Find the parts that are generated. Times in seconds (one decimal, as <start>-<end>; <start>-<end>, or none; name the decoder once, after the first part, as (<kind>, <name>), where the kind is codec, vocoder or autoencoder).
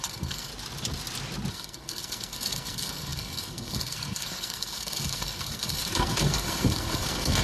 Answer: 0.0-0.5 (codec, SNAC); 1.5-7.4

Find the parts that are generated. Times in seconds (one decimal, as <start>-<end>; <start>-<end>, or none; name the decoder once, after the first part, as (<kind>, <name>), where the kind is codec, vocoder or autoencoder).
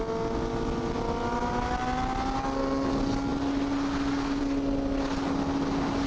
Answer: none